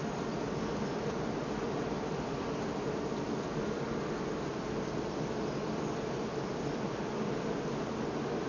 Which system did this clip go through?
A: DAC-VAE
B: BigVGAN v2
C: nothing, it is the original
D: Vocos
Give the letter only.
C